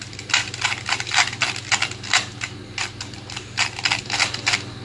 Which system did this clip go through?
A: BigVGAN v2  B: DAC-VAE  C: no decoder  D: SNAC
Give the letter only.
C